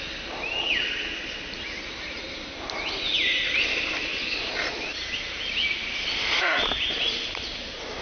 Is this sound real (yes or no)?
yes